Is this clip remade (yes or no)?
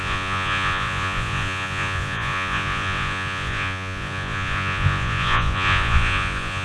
yes